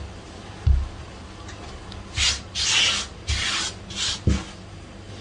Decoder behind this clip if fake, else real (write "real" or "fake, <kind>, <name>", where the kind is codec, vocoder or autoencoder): real